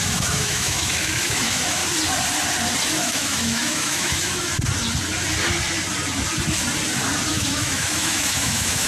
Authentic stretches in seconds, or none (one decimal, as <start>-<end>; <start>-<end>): 1.8-3.0; 4.5-7.3